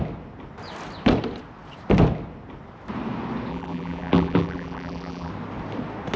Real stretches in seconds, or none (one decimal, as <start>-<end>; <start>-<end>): 0.0-3.5; 5.3-6.2